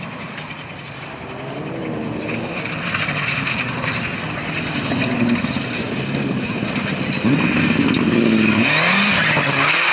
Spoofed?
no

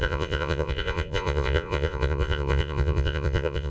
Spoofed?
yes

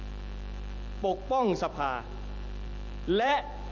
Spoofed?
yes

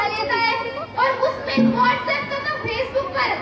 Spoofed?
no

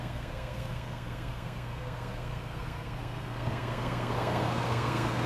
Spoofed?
yes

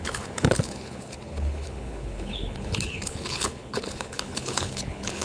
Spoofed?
yes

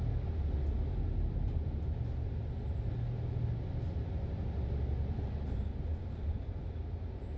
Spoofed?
no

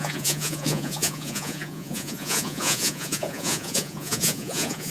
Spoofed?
yes